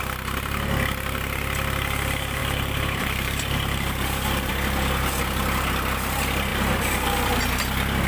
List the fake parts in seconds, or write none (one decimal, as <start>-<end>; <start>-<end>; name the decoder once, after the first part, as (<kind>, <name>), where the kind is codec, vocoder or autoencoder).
2.4-4.5 (vocoder, BigVGAN v2); 6.5-7.4